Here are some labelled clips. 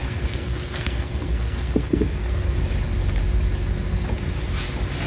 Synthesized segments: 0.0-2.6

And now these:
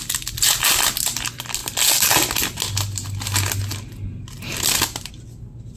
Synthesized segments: none